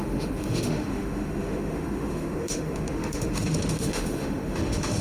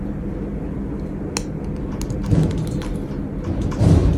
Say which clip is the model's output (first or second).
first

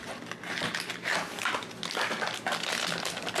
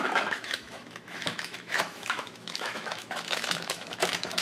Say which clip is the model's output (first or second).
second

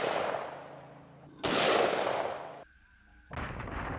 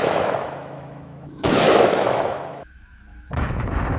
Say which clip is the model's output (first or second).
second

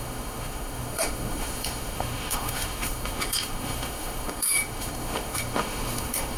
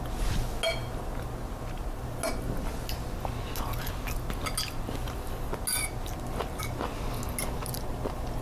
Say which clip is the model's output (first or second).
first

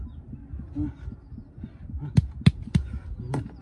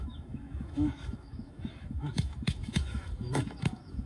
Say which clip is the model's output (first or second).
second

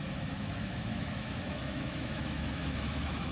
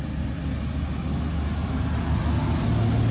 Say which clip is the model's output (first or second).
first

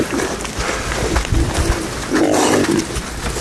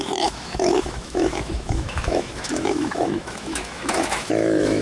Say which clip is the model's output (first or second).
second